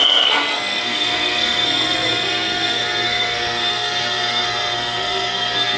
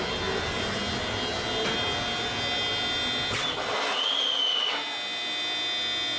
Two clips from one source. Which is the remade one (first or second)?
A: first